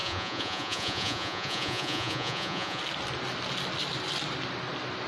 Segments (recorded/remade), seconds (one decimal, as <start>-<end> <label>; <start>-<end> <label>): 0.0-2.8 remade; 2.8-5.1 recorded